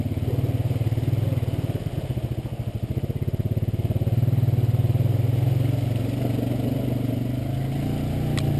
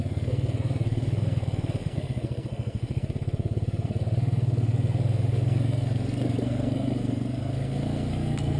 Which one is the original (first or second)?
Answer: first